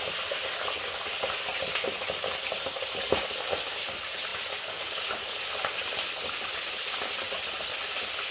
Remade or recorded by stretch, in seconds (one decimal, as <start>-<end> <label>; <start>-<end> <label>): 0.0-1.5 recorded; 1.5-2.7 remade; 2.7-4.3 recorded; 4.3-7.6 remade; 7.6-8.3 recorded